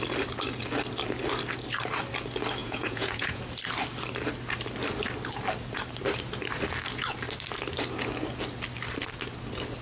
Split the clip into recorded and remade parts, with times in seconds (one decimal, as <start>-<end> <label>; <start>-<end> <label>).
0.0-2.6 recorded; 2.6-3.4 remade; 3.4-9.8 recorded